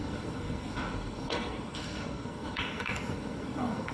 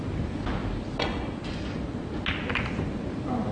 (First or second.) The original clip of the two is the second